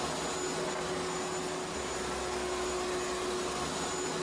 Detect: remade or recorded recorded